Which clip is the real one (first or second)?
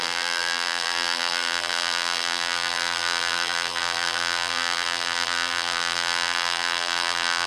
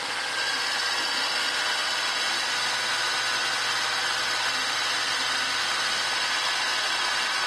second